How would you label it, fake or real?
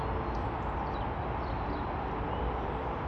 real